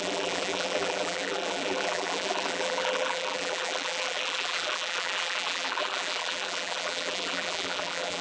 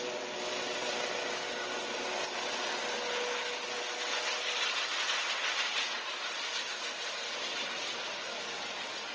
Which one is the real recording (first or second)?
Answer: second